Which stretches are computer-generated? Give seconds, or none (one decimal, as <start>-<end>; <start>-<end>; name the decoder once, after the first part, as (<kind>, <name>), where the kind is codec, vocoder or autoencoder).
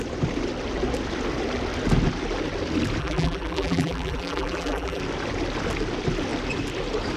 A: 3.0-5.0 (vocoder, BigVGAN v2)